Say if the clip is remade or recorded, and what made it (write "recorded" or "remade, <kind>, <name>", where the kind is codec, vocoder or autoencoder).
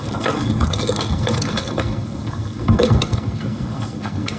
remade, codec, SNAC